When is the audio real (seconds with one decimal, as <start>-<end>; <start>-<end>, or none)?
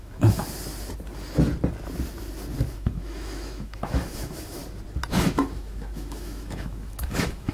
0.4-2.7; 4.6-5.1